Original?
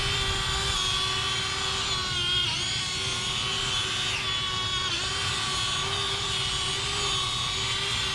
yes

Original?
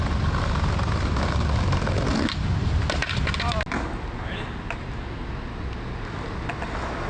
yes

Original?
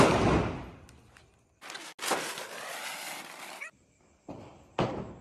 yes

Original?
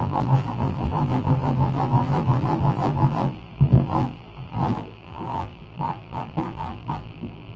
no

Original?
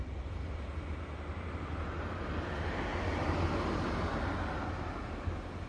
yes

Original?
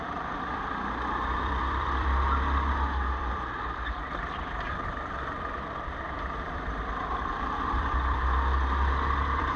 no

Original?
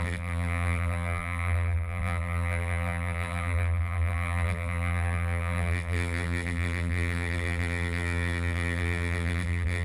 no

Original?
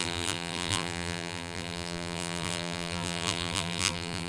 no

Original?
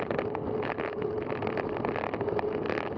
yes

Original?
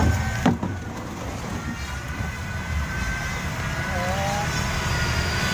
yes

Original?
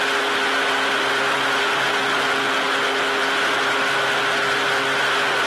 yes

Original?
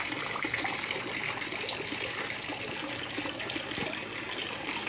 yes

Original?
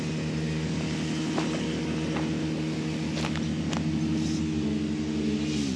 yes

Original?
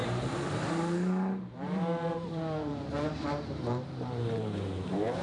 no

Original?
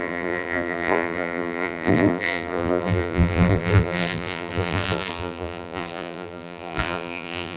no